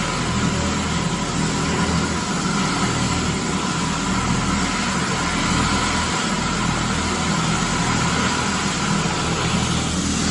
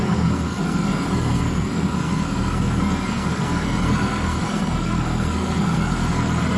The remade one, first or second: second